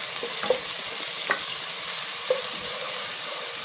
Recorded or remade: remade